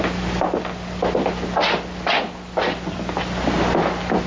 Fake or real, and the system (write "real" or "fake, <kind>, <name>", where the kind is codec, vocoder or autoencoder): real